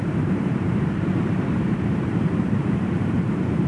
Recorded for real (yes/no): no